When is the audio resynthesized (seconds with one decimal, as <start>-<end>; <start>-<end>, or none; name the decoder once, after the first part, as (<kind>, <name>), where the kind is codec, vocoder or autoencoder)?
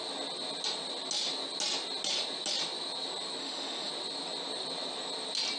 3.4-3.9 (autoencoder, DAC-VAE)